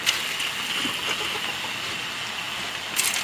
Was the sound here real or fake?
real